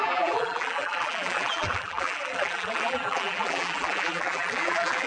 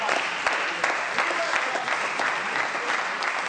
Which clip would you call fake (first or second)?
first